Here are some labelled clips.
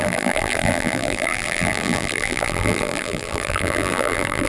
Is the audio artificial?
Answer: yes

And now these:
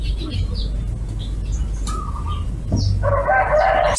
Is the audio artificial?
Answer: no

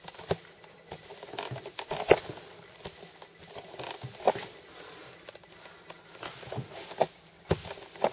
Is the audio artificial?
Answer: no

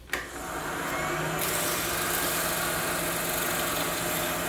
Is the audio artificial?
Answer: no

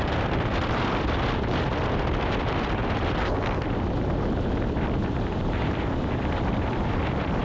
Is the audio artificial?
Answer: yes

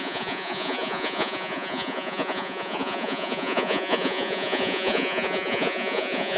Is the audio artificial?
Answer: yes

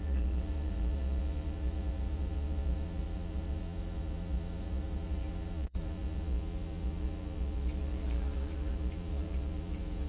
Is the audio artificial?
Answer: yes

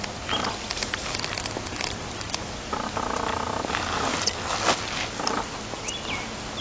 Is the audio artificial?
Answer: no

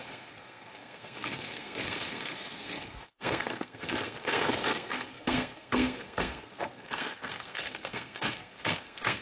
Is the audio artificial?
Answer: yes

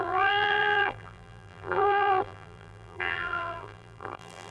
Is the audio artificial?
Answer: yes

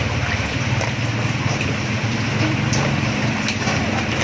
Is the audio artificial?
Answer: no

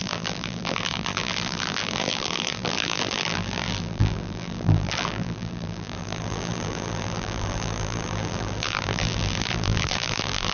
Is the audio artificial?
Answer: yes